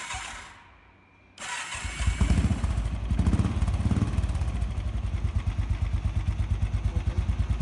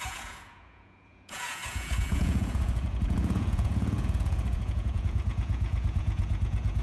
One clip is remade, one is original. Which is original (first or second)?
first